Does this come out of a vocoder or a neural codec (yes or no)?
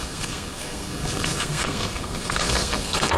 yes